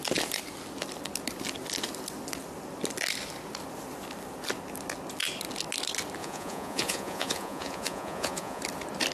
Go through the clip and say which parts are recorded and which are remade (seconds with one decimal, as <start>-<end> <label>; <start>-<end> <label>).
0.0-6.2 recorded; 6.2-8.6 remade; 8.6-9.1 recorded